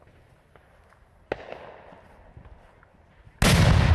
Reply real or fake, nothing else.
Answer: real